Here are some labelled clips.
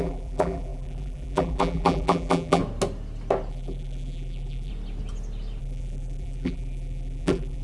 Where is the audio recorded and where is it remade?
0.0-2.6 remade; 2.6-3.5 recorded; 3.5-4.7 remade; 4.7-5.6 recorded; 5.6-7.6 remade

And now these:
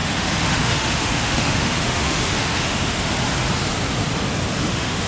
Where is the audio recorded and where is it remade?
0.0-3.1 remade; 3.1-4.6 recorded; 4.6-5.1 remade

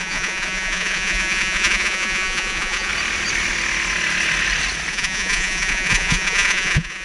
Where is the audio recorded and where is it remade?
0.0-2.9 remade; 2.9-4.9 recorded; 4.9-7.0 remade